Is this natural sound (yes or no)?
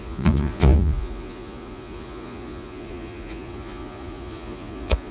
no